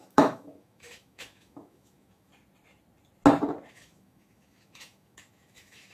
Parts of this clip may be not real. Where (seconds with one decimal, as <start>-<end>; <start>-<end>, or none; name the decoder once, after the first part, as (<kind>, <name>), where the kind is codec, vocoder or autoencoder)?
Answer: 0.0-2.3 (autoencoder, DAC-VAE); 3.7-5.9